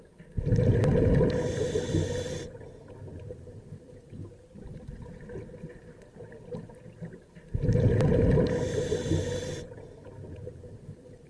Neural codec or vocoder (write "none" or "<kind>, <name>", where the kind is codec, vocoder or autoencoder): none